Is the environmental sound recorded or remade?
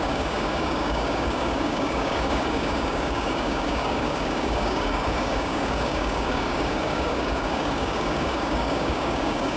remade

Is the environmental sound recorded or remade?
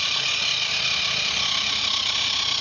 recorded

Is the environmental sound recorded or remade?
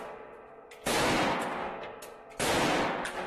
recorded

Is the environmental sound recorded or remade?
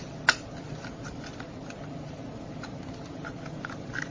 recorded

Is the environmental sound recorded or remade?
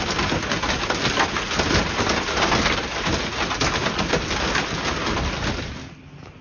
recorded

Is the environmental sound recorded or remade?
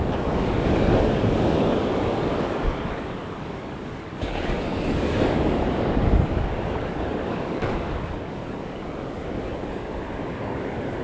remade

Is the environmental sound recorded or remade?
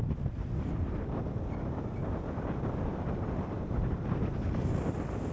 recorded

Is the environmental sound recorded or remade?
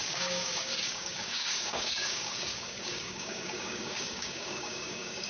remade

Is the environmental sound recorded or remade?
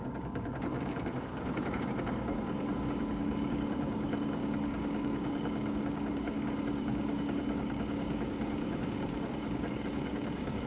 remade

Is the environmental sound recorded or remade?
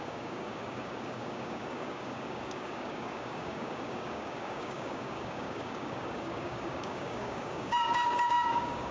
remade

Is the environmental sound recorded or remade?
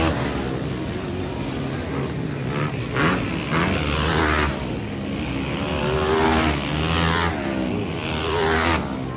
recorded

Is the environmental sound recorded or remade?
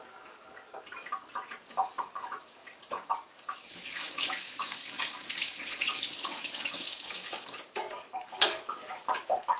remade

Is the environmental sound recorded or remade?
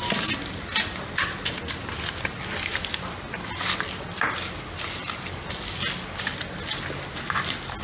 recorded